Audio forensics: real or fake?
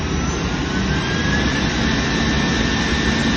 real